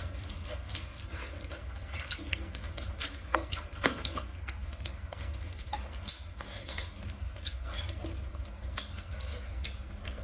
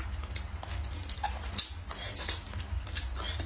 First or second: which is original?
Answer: second